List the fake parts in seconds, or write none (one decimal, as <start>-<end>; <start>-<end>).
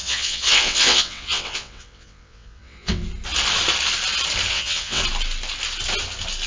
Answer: 0.0-3.0; 4.5-5.0